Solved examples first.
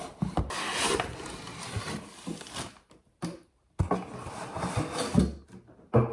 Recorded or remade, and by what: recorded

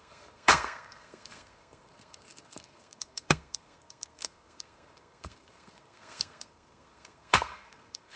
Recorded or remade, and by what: remade, codec, SNAC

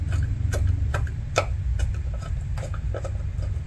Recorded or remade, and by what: recorded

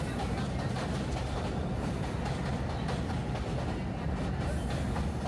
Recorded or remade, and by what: recorded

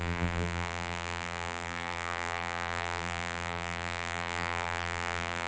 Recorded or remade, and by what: remade, vocoder, BigVGAN v2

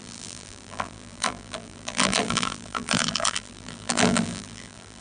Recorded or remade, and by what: remade, vocoder, BigVGAN v2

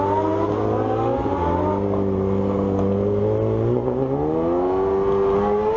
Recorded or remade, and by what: recorded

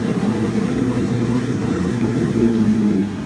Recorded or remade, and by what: remade, codec, SNAC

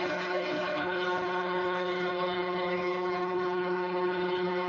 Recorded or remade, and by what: remade, codec, HILCodec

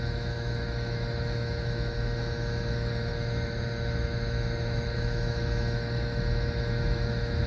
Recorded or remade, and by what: remade, autoencoder, DAC-VAE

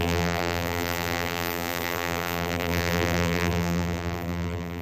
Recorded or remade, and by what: remade, vocoder, BigVGAN v2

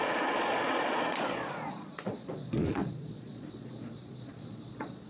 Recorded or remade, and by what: remade, vocoder, Vocos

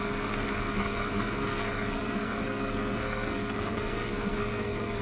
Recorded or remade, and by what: remade, codec, SNAC